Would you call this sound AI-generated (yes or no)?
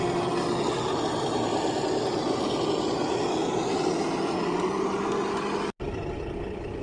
no